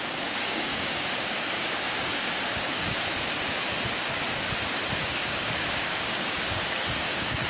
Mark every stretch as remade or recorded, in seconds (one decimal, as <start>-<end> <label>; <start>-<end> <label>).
0.0-3.1 remade; 3.1-5.0 recorded; 5.0-7.5 remade